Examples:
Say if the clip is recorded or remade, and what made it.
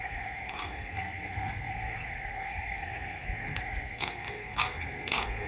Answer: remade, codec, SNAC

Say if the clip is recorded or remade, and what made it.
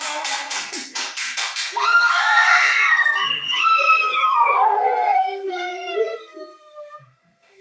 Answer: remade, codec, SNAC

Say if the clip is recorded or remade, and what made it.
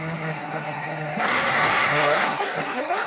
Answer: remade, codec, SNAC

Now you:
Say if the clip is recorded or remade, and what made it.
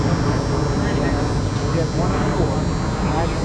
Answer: recorded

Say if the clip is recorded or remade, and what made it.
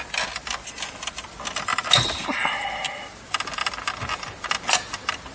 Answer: recorded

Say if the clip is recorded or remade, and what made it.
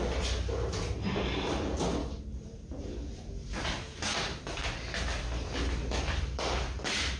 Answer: recorded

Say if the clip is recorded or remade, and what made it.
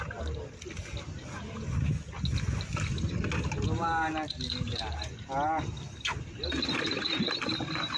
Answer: recorded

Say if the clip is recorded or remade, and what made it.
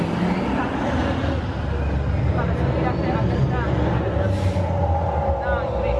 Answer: recorded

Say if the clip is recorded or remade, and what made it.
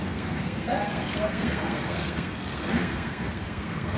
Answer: remade, codec, SNAC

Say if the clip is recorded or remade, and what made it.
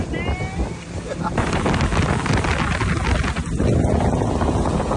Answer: recorded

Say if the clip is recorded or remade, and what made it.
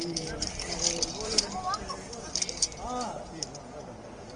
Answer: recorded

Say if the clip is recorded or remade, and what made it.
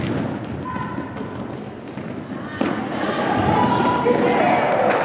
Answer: recorded